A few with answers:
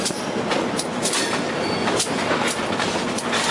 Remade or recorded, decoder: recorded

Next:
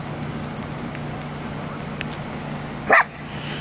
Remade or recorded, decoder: recorded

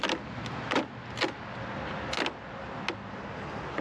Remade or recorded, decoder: recorded